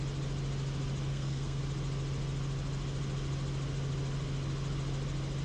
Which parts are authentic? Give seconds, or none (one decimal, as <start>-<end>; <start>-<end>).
0.0-1.1; 1.6-5.4